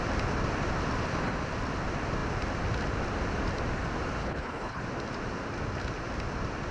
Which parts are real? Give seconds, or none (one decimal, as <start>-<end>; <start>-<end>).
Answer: 0.0-4.2; 4.8-6.7